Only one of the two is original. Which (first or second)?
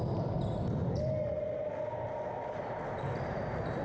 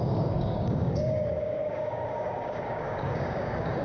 first